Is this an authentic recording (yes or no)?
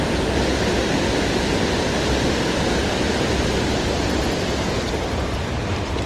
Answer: yes